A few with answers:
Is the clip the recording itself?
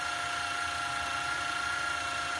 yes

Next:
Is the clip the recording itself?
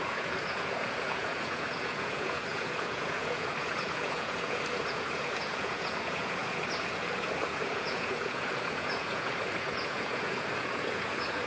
no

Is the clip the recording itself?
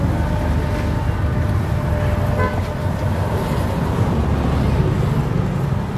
yes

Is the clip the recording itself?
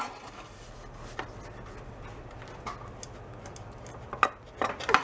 yes